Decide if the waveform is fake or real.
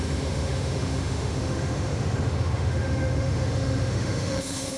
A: fake